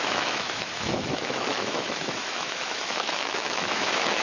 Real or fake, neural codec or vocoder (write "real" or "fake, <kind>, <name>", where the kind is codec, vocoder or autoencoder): fake, autoencoder, DAC-VAE